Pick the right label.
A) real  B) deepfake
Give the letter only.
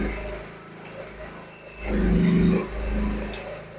A